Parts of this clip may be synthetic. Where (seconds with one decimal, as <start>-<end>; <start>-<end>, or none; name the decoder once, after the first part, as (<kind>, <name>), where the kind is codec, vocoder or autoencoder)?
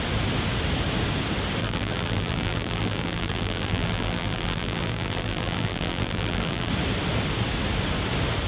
1.6-6.7 (vocoder, BigVGAN v2)